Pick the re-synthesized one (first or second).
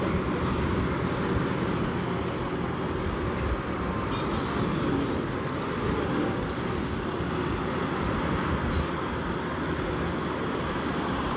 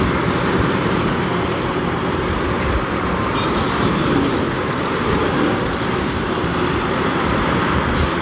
second